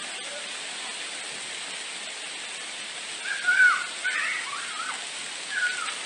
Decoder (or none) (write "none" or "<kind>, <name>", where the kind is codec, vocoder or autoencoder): none